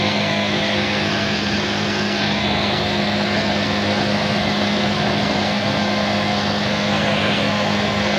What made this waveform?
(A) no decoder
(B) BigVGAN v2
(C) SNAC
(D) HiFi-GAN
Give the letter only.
C